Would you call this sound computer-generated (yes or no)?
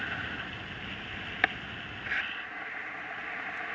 no